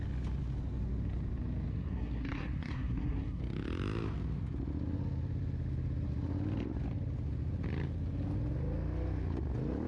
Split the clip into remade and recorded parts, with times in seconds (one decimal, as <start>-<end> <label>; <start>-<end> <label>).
0.0-1.7 recorded; 1.7-3.4 remade; 3.4-9.9 recorded

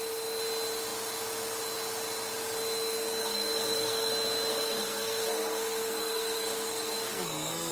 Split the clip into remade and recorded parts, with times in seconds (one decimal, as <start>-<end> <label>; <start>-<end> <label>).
0.0-3.2 recorded; 3.2-4.1 remade; 4.1-4.5 recorded; 4.5-7.7 remade